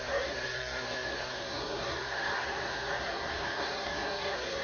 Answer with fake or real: fake